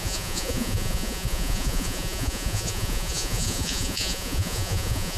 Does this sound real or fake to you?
fake